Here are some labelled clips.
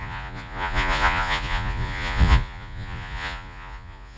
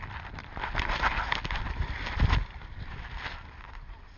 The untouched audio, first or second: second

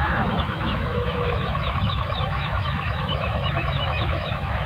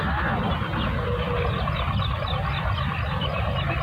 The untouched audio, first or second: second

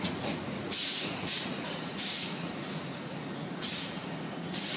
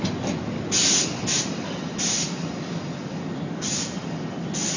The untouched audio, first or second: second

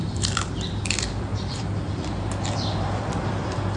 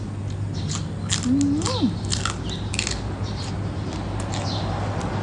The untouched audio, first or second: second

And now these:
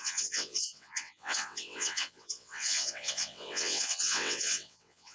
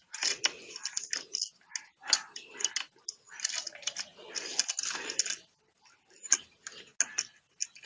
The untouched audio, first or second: second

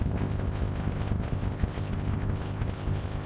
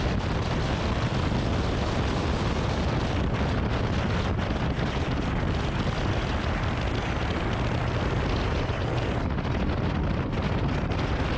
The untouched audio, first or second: second